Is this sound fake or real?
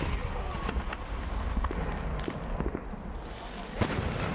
real